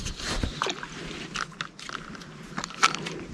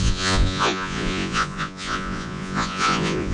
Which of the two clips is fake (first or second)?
second